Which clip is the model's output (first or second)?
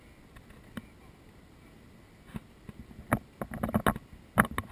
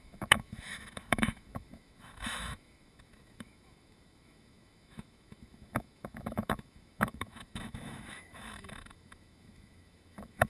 second